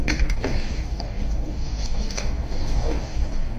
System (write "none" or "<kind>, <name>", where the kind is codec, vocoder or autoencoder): codec, DAC